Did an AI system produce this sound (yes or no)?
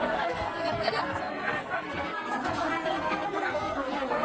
yes